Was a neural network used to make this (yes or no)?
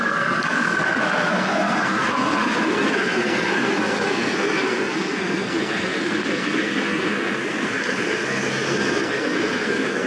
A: yes